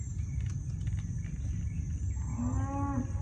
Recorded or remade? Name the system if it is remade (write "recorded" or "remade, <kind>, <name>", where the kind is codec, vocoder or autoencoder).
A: recorded